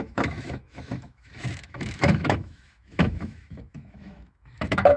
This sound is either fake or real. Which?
fake